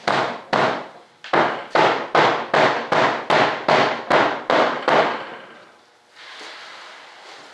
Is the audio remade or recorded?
recorded